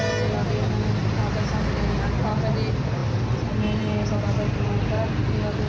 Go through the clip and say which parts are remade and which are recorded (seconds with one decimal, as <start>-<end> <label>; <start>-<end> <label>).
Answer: 0.0-5.7 recorded